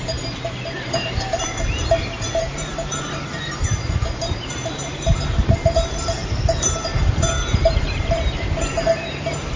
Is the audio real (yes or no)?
no